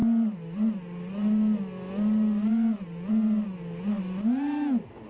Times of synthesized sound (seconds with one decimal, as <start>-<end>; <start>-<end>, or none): none